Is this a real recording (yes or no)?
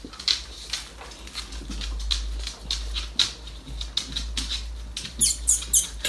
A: yes